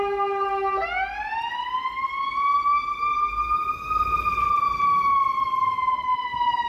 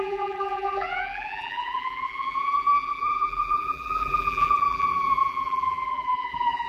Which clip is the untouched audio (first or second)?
first